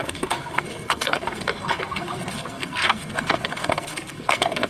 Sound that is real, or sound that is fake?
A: fake